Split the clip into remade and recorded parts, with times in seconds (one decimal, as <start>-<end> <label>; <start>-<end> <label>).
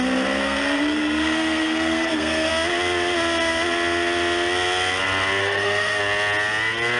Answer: 0.0-0.4 recorded; 0.4-2.5 remade; 2.5-5.4 recorded; 5.4-6.0 remade; 6.0-7.0 recorded